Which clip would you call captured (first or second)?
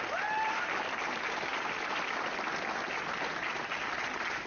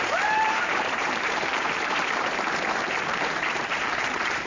first